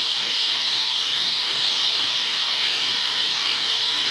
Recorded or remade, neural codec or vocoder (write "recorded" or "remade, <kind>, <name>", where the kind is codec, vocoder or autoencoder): remade, codec, DAC